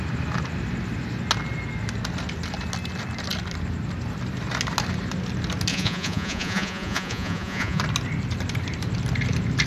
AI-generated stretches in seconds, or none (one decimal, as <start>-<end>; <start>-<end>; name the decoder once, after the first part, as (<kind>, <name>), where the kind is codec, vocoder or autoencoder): 5.7-7.8 (vocoder, Vocos)